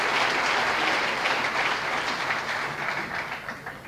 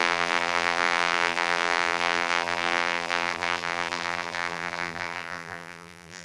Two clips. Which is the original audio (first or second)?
first